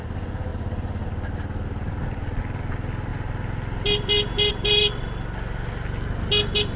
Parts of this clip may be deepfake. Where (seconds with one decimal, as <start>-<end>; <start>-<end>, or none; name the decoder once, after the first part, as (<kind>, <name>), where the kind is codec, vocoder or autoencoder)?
none